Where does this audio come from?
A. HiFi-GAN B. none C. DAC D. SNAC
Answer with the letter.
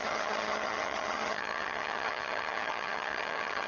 A